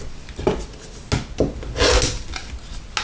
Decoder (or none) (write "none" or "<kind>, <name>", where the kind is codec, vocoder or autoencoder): none